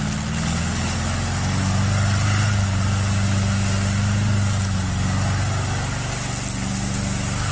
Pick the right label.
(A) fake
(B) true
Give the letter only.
B